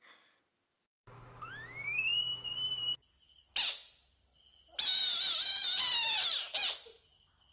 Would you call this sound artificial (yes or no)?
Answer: no